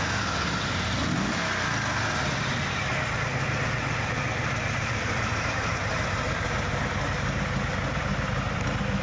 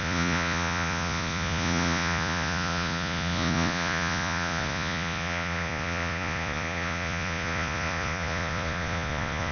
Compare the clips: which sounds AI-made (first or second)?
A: second